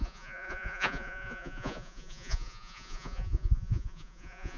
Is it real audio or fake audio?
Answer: fake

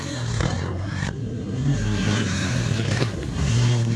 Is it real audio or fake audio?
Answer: fake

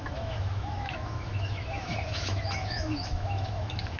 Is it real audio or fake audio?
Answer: fake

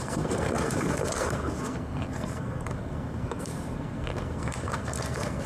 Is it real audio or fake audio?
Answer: fake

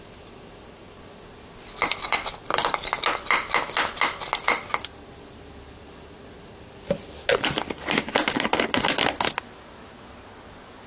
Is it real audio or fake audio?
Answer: real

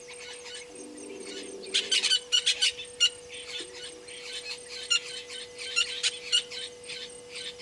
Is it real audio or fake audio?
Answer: real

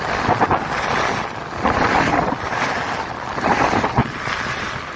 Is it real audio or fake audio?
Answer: real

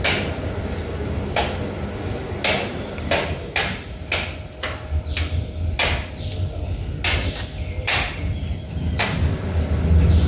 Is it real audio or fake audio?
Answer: real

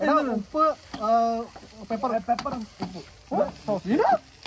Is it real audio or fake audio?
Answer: real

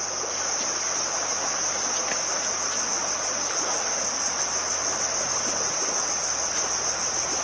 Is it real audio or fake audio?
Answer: real